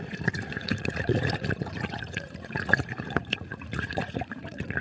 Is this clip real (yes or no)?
no